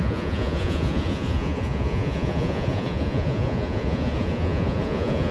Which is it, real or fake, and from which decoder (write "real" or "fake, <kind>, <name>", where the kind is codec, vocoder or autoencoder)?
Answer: fake, vocoder, Vocos